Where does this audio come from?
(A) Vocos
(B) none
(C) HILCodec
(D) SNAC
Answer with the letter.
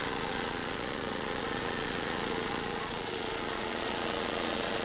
A